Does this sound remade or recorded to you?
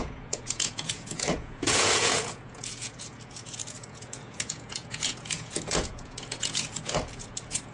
remade